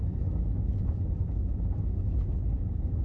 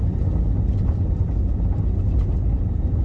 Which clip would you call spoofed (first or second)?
first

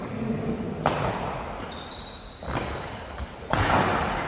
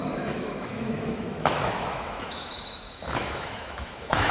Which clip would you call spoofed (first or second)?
second